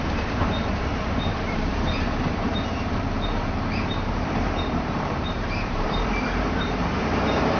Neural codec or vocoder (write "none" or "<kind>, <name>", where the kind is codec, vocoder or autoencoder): vocoder, BigVGAN v2